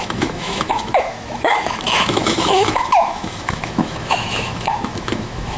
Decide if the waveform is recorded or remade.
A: remade